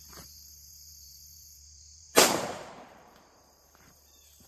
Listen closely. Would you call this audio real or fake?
fake